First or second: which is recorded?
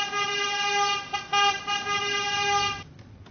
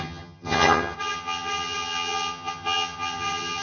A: first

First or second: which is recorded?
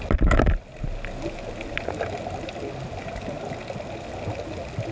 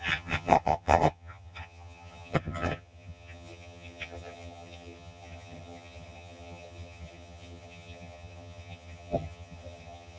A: first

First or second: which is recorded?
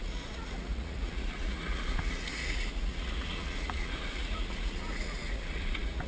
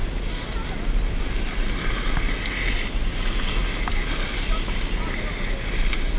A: second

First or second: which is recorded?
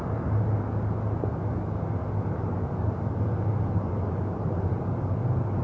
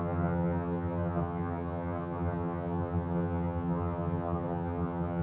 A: first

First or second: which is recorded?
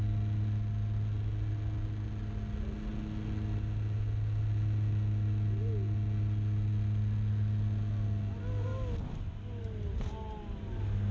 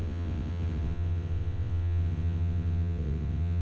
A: first